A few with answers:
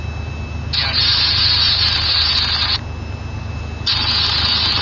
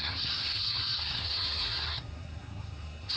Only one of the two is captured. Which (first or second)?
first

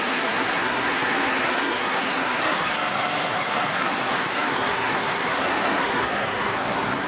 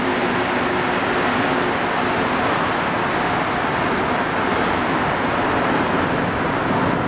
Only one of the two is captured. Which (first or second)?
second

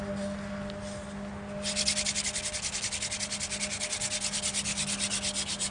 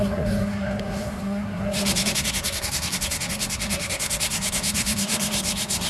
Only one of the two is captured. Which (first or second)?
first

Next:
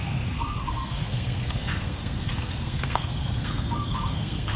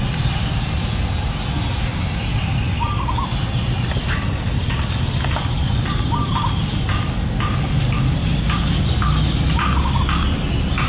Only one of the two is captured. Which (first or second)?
second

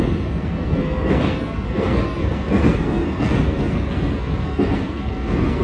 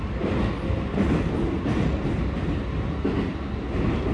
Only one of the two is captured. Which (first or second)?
second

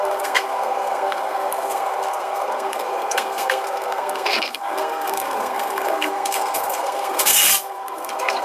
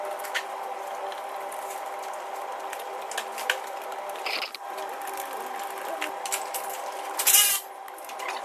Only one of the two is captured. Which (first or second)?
second